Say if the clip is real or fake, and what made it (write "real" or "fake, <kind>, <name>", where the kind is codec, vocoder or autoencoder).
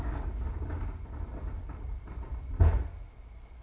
real